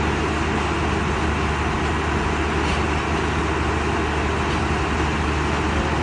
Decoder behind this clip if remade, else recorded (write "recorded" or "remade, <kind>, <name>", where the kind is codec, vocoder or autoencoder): recorded